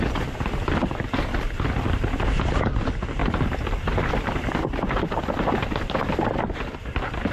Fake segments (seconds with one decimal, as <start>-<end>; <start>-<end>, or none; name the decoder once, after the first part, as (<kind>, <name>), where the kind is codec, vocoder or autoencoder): none